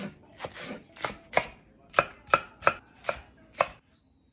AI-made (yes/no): no